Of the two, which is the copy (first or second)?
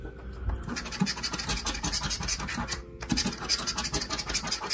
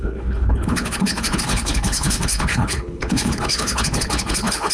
second